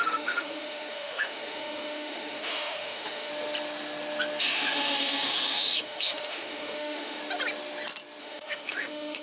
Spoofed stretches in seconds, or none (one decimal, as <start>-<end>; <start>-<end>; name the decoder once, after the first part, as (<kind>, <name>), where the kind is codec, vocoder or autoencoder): 0.0-3.3 (autoencoder, DAC-VAE); 4.4-7.2; 8.2-9.2